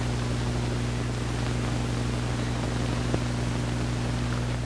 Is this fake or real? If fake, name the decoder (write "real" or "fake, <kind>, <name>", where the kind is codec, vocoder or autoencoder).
real